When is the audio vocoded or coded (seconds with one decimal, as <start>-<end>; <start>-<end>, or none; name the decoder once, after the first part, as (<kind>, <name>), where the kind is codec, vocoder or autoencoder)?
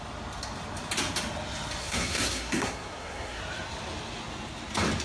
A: 1.8-3.4 (codec, SNAC)